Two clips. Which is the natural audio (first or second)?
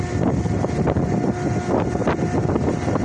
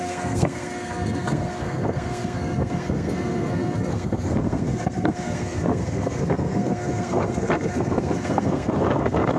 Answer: first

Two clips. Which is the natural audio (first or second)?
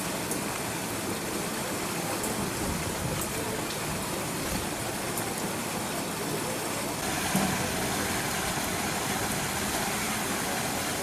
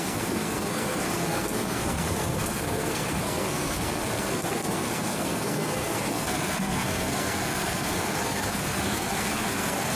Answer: first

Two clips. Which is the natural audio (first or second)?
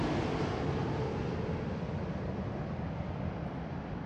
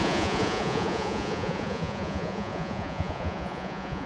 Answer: first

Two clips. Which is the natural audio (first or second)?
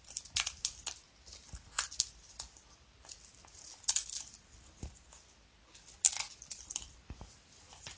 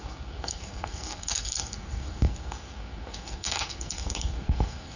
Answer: first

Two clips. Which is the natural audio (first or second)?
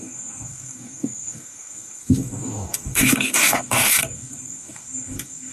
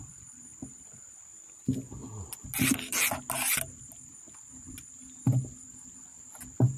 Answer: second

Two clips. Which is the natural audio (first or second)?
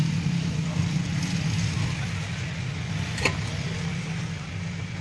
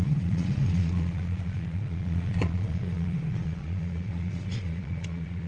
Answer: first